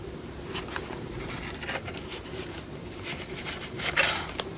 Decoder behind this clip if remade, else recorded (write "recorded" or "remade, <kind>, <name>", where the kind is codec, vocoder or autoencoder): remade, vocoder, BigVGAN v2